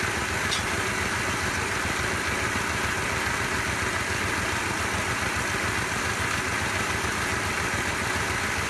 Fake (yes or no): no